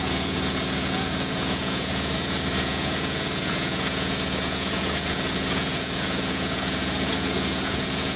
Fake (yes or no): yes